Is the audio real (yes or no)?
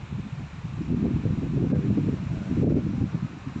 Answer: yes